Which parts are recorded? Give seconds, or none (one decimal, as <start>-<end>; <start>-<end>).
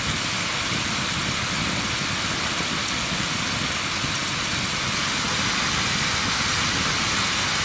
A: 0.0-7.6